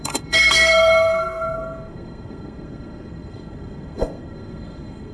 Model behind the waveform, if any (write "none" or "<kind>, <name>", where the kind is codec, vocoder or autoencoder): codec, SNAC